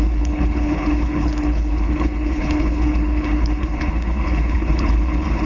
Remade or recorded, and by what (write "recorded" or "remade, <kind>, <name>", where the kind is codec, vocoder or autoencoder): remade, codec, HILCodec